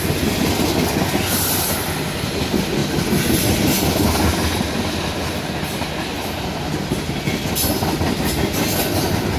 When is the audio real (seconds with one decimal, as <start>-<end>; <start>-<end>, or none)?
0.0-9.4